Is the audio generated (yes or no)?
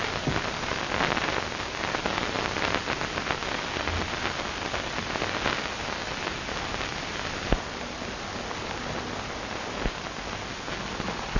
no